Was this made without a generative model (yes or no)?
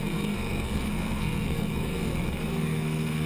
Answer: no